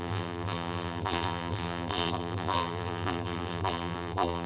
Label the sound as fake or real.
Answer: fake